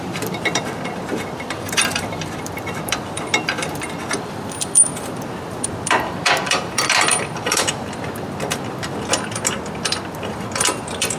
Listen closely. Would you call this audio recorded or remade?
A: remade